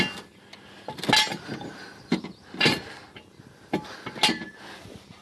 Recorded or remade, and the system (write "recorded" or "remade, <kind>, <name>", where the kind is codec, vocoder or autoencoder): recorded